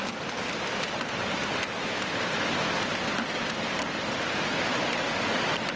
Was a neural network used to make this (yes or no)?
no